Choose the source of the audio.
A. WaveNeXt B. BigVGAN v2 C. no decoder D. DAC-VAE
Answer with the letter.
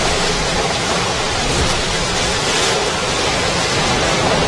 C